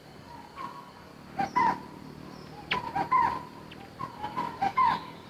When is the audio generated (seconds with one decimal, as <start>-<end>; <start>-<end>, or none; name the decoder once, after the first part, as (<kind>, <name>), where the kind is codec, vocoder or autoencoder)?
0.0-1.1 (codec, DAC); 4.1-5.3

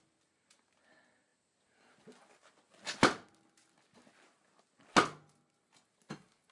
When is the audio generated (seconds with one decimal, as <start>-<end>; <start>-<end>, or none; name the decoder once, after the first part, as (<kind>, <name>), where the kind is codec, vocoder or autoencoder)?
none

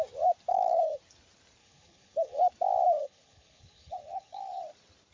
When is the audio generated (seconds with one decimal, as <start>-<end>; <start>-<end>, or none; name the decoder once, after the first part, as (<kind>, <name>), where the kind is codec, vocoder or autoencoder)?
0.5-1.0 (codec, HILCodec); 1.6-2.5; 3.0-4.6

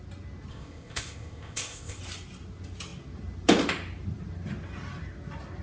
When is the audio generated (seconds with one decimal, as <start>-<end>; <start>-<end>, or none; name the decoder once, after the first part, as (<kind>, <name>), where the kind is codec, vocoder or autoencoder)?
0.5-2.0 (codec, ZipCodec)

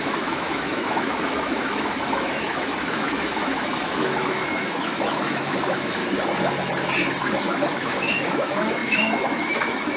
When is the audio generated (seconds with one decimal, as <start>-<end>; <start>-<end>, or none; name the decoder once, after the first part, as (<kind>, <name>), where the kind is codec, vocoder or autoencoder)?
0.0-6.0 (autoencoder, DAC-VAE); 7.2-10.0

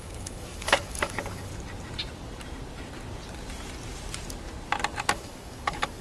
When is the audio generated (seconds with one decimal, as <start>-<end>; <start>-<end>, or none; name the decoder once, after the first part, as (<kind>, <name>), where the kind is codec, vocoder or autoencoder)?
0.0-1.5 (codec, DAC); 5.1-6.0